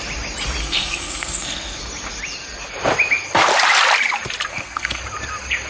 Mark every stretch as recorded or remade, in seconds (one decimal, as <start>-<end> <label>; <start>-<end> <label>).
0.0-0.6 recorded; 0.6-1.8 remade; 1.8-4.5 recorded; 4.5-5.0 remade; 5.0-5.7 recorded